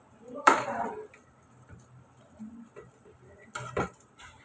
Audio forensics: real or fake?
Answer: fake